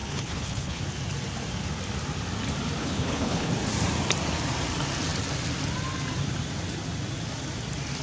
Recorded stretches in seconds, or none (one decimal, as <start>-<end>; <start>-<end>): 0.8-2.8; 3.5-8.0